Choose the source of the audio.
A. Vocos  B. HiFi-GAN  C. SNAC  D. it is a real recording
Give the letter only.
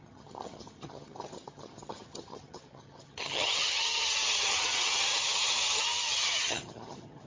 B